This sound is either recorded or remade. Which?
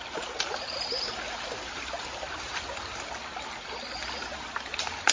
recorded